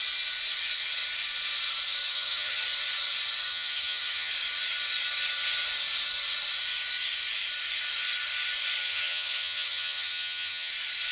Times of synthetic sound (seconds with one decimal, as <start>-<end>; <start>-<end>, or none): 2.1-2.6; 3.5-4.3; 8.8-10.7